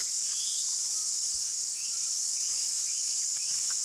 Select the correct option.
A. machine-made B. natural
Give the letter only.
A